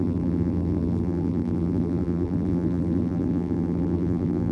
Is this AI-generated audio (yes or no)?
yes